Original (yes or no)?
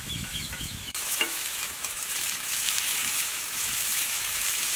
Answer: no